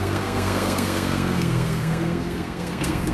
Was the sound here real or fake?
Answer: fake